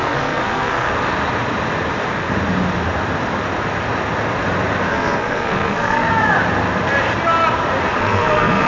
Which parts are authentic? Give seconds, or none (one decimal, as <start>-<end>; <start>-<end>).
0.9-4.9; 6.1-8.0